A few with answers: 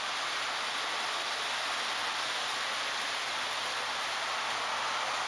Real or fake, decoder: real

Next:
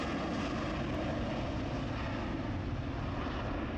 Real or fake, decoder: real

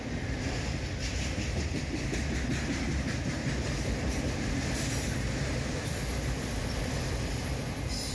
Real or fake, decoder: real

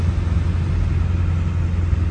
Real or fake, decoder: real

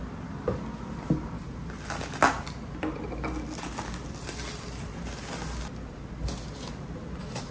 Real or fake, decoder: real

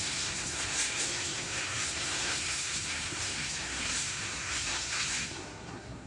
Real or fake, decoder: fake, codec, SNAC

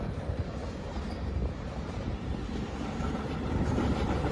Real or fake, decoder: real